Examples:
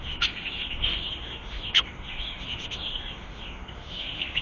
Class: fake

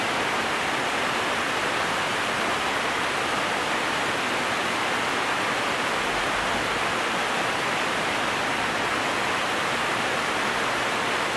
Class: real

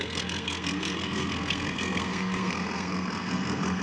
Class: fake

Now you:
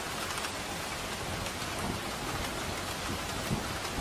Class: real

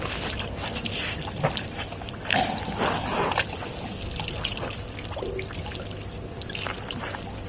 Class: real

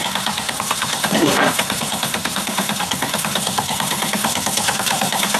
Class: fake